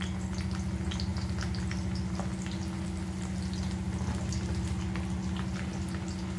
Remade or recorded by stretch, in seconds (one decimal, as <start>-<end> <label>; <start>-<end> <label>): 0.0-6.4 recorded